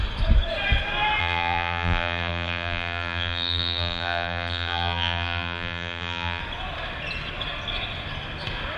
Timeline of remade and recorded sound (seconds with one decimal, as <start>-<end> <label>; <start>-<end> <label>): 0.0-1.2 recorded; 1.2-6.4 remade; 6.4-8.8 recorded